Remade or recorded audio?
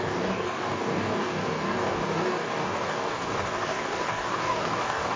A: remade